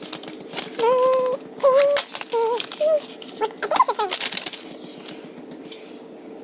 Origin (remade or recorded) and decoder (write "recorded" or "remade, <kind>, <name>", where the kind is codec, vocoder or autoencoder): recorded